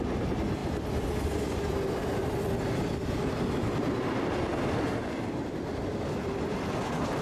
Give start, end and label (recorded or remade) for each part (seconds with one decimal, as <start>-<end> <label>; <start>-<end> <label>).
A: 0.0-7.2 recorded